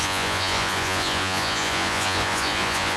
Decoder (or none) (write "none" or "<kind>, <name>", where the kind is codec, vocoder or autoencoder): vocoder, Vocos